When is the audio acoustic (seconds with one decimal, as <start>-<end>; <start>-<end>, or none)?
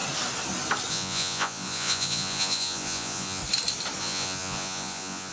0.0-0.9; 3.4-4.0